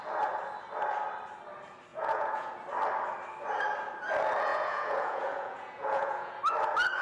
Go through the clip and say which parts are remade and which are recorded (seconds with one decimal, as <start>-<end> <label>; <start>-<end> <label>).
0.0-1.9 recorded; 1.9-2.5 remade; 2.5-4.5 recorded; 4.5-6.4 remade; 6.4-7.0 recorded